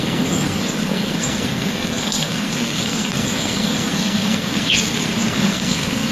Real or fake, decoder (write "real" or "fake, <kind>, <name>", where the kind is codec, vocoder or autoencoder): fake, codec, SNAC